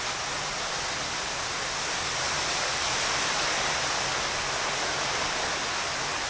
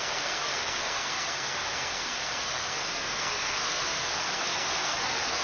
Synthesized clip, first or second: second